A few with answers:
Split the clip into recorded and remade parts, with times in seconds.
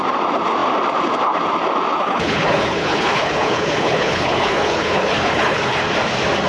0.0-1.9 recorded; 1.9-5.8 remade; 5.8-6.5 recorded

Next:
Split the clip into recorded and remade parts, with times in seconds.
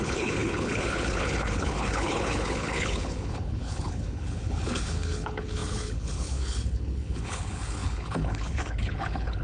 0.0-9.4 remade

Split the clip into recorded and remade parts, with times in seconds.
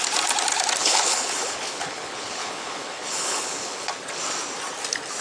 0.0-0.8 recorded; 0.8-3.9 remade; 3.9-5.2 recorded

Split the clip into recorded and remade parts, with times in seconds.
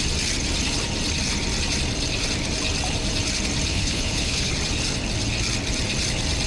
0.0-3.7 recorded; 3.7-4.5 remade; 4.5-6.5 recorded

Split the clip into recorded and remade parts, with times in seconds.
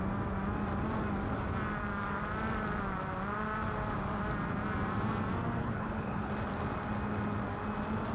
0.0-5.6 recorded; 5.6-6.3 remade; 6.3-8.1 recorded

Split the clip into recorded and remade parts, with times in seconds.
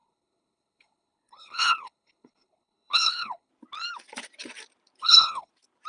0.0-3.5 remade; 3.5-5.0 recorded; 5.0-5.5 remade; 5.5-5.9 recorded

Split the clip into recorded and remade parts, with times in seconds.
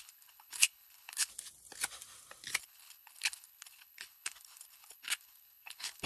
0.0-1.3 remade; 1.3-2.6 recorded; 2.6-6.1 remade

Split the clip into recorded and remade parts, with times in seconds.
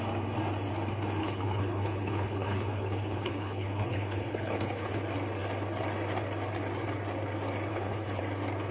0.0-1.2 recorded; 1.2-5.0 remade; 5.0-7.7 recorded; 7.7-8.2 remade; 8.2-8.7 recorded